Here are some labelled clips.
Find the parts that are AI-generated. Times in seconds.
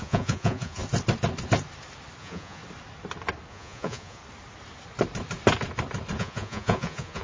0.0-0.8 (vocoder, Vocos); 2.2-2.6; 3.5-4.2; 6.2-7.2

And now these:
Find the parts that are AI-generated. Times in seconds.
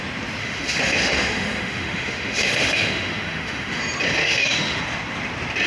0.4-3.8 (autoencoder, DAC-VAE); 4.2-4.8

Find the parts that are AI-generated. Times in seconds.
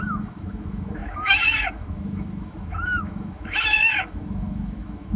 0.0-5.2 (autoencoder, DAC-VAE)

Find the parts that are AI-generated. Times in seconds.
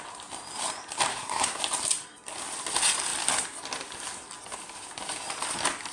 1.1-1.6 (codec, SNAC)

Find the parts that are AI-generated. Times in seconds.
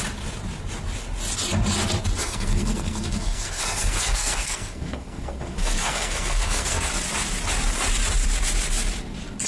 2.2-6.9 (codec, SNAC)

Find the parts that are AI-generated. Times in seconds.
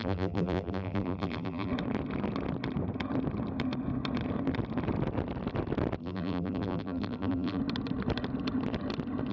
0.0-1.7 (vocoder, BigVGAN v2); 6.0-7.6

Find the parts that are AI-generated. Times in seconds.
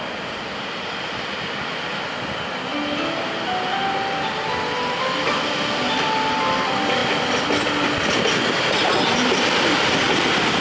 none